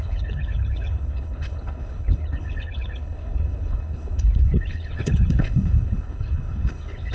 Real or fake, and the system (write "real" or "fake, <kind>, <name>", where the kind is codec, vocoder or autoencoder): fake, codec, HILCodec